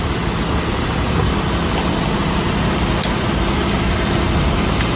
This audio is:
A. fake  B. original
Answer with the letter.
B